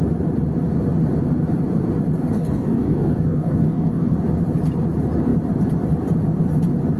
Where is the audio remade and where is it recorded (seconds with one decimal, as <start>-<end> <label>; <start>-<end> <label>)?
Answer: 0.0-2.3 recorded; 2.3-4.2 remade; 4.2-7.0 recorded